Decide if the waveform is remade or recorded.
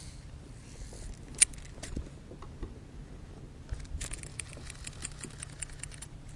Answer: recorded